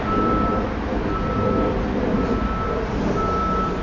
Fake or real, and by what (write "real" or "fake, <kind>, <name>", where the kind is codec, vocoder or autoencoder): real